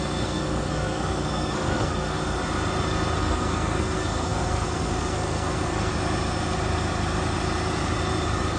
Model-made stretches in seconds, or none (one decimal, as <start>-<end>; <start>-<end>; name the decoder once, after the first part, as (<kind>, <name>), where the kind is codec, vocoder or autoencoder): 0.0-2.2 (codec, SNAC); 3.2-5.9